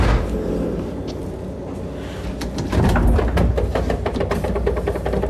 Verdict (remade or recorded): recorded